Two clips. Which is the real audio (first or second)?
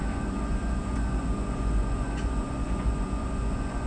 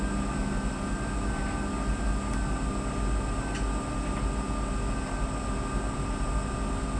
second